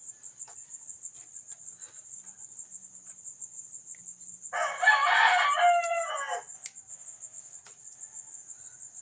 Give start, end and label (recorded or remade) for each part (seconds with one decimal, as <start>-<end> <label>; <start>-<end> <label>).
0.0-9.0 recorded

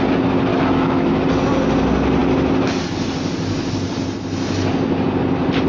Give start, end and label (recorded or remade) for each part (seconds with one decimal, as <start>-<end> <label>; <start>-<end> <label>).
0.0-0.5 recorded; 0.5-1.2 remade; 1.2-5.7 recorded

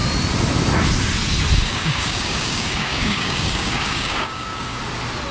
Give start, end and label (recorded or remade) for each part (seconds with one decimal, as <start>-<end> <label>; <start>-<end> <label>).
0.0-1.7 recorded; 1.7-4.8 remade; 4.8-5.3 recorded

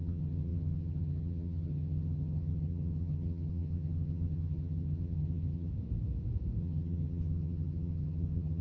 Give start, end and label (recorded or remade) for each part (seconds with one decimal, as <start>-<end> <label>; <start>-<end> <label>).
0.0-5.7 remade; 5.7-6.6 recorded; 6.6-8.6 remade

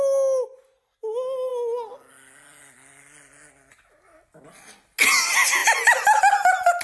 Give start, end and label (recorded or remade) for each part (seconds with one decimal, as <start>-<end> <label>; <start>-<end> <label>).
0.0-6.8 recorded

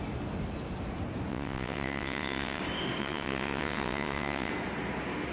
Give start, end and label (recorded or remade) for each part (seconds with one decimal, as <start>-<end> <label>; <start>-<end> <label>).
0.0-1.3 recorded; 1.3-2.6 remade; 2.6-3.0 recorded; 3.0-4.5 remade; 4.5-5.3 recorded